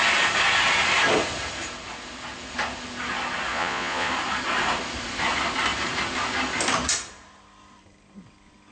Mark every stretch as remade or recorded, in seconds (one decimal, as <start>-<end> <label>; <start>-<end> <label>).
0.0-3.5 recorded; 3.5-4.1 remade; 4.1-8.7 recorded